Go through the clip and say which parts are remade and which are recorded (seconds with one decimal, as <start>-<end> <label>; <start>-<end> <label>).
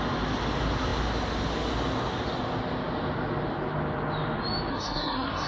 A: 0.0-4.7 recorded; 4.7-5.5 remade